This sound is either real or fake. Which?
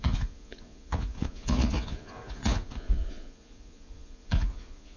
fake